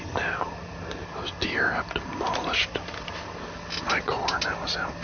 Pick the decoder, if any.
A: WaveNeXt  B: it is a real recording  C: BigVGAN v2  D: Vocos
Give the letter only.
B